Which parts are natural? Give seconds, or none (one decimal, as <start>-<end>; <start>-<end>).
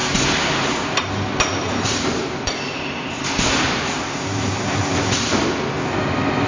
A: 1.1-1.5; 5.4-6.5